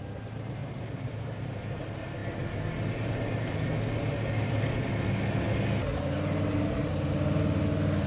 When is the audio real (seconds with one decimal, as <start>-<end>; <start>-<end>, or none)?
0.0-0.6; 1.8-5.9; 6.9-8.1